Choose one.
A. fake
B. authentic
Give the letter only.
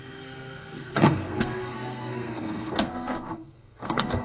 A